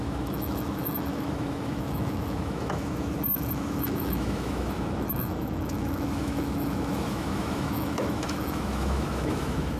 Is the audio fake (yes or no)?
yes